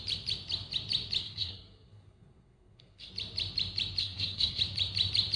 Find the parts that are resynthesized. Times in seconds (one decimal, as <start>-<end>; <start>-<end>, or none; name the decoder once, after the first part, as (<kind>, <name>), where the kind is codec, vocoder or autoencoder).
1.2-3.1 (codec, SNAC); 4.0-4.6